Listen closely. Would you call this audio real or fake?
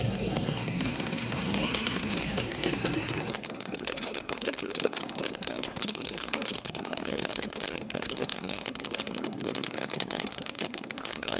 fake